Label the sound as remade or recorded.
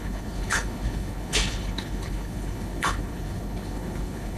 remade